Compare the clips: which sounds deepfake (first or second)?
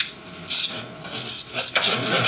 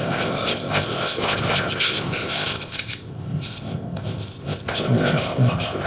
second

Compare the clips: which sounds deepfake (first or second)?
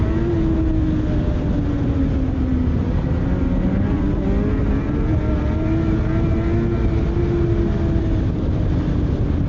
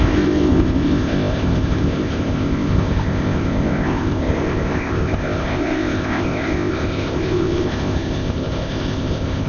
second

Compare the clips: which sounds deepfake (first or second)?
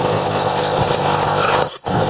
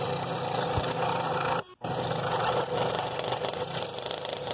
first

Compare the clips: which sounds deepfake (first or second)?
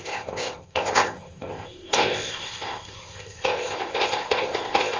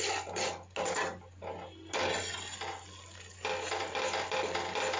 first